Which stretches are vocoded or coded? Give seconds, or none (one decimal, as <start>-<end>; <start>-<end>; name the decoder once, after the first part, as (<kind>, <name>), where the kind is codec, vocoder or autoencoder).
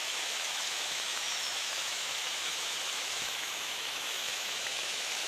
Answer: 0.0-5.3 (autoencoder, DAC-VAE)